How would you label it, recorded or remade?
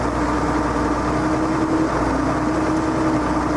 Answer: recorded